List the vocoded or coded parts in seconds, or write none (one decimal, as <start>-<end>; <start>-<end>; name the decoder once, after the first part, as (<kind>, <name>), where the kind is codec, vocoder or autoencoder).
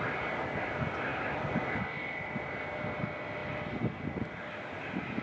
1.1-2.6 (vocoder, BigVGAN v2)